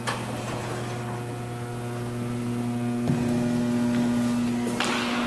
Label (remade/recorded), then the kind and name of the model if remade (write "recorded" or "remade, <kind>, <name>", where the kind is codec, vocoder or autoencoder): recorded